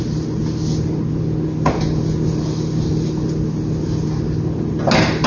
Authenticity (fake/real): real